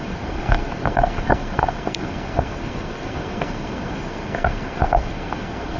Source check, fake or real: fake